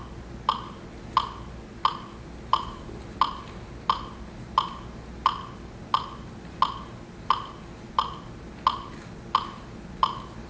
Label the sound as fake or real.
real